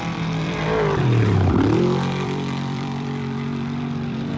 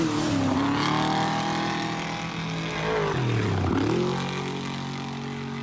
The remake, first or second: first